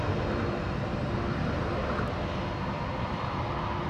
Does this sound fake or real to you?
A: real